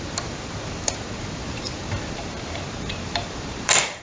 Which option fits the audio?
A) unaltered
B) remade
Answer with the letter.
B